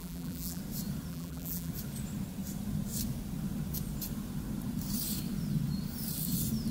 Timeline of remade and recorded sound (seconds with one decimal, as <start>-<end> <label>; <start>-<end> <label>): 0.0-0.6 remade; 0.6-1.1 recorded; 1.1-1.7 remade; 1.7-6.7 recorded